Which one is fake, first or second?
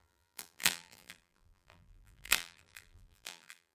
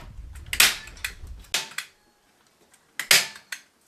first